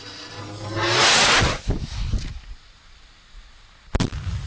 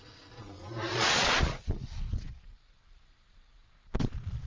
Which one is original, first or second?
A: first